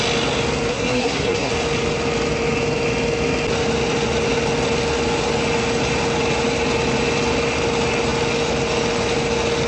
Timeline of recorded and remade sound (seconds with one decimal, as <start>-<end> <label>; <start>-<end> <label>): 0.0-0.7 recorded; 0.7-1.5 remade; 1.5-9.7 recorded